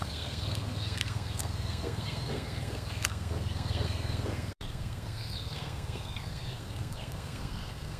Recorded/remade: remade